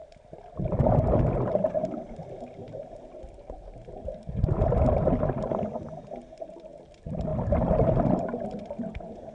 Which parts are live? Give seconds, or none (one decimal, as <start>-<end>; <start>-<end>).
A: 0.0-9.3